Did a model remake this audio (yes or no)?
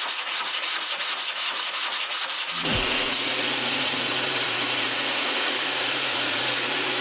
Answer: yes